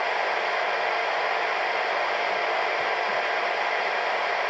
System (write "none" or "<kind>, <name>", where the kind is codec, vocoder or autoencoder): none